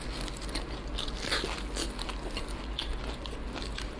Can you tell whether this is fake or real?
real